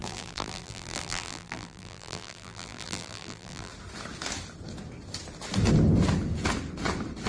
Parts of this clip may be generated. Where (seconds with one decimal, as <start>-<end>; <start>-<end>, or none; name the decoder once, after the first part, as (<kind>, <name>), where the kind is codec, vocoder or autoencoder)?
0.0-3.7 (vocoder, BigVGAN v2)